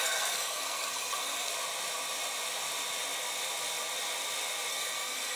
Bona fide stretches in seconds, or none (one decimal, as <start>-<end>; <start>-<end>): 1.5-4.7